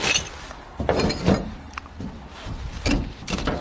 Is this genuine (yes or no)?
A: yes